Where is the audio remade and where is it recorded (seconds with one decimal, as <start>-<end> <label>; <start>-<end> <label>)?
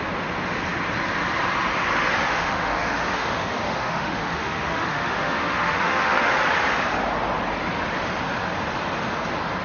0.0-2.3 recorded; 2.3-6.3 remade; 6.3-9.6 recorded